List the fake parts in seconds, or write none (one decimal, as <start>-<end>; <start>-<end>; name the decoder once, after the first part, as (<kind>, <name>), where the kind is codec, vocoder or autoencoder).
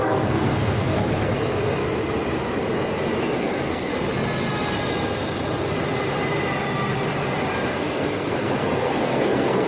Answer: 0.0-1.8 (codec, SNAC); 3.2-3.9; 7.7-9.7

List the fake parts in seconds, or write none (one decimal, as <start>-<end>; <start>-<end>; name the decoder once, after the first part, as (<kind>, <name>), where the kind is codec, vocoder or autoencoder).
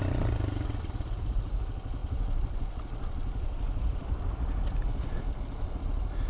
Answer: none